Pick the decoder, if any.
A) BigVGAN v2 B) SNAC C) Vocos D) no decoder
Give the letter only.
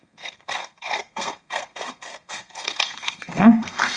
B